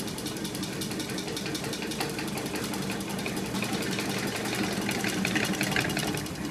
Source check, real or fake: fake